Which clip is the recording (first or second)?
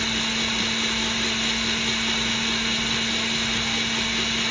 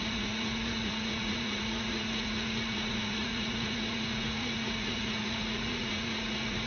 first